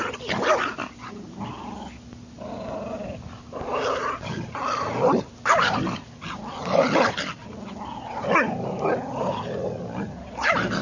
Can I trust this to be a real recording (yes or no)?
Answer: yes